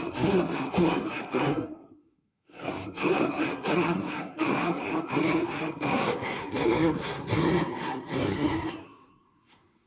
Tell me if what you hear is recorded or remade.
remade